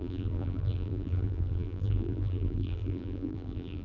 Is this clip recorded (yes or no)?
no